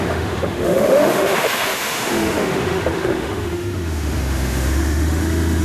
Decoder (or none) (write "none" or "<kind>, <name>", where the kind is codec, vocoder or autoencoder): autoencoder, DAC-VAE